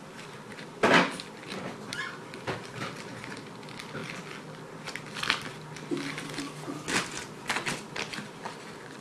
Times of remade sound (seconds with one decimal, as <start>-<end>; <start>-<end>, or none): none

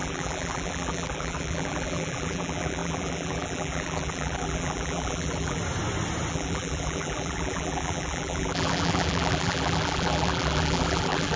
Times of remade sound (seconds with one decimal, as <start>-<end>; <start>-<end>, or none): 0.0-5.6; 6.3-11.4

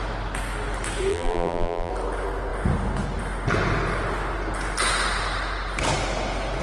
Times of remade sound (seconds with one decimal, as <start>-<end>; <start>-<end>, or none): 1.1-1.9